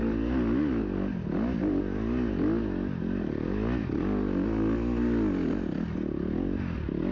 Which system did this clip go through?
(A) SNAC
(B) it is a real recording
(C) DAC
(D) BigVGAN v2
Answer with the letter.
B